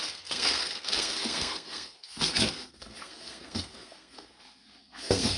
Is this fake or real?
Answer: fake